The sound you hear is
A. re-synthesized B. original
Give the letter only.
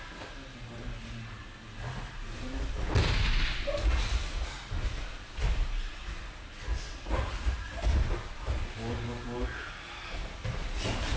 B